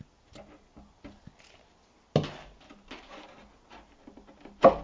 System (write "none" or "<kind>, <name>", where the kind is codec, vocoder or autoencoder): none